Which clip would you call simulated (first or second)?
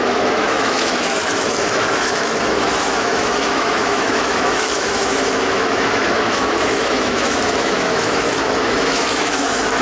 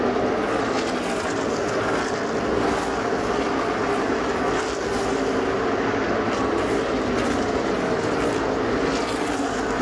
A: first